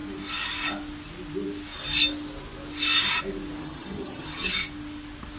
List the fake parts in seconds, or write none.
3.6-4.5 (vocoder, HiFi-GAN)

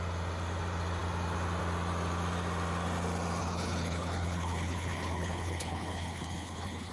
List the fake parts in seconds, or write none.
3.4-6.9 (codec, HILCodec)

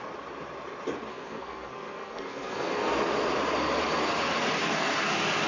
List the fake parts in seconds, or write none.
1.1-2.9 (codec, SNAC); 4.6-5.1

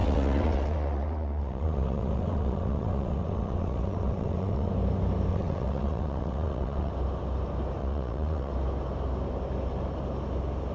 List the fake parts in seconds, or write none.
0.0-4.7 (vocoder, WaveNeXt); 5.3-6.9; 7.8-8.5

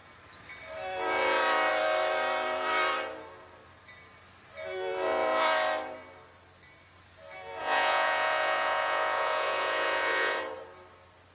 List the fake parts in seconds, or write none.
7.6-10.4 (vocoder, Vocos)

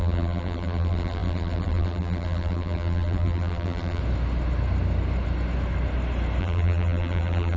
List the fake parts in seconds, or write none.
0.0-4.0 (vocoder, BigVGAN v2); 6.4-7.6

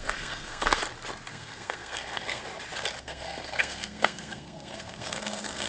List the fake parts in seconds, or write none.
0.0-0.8 (codec, SNAC); 1.3-2.4; 3.0-5.7